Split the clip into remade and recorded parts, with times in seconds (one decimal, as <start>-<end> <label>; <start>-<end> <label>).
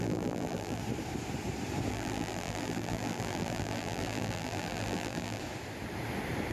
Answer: 0.0-0.8 remade; 0.8-1.9 recorded; 1.9-5.4 remade; 5.4-6.5 recorded